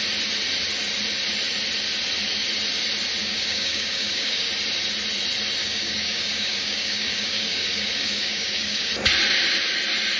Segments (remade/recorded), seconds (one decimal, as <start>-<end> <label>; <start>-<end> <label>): 0.0-3.2 recorded; 3.2-4.5 remade; 4.5-5.6 recorded; 5.6-8.9 remade; 8.9-10.2 recorded